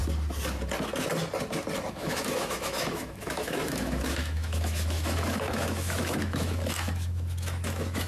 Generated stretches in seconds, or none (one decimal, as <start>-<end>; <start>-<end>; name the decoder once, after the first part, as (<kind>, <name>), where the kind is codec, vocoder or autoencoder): 1.9-8.1 (autoencoder, DAC-VAE)